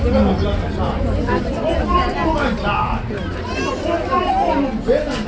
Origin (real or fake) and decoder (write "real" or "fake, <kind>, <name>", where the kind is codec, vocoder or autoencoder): real